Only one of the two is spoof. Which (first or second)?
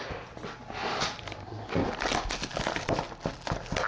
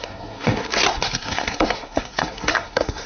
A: second